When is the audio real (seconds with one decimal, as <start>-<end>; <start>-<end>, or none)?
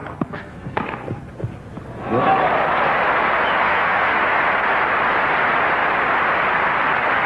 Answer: 1.3-3.6; 4.2-7.3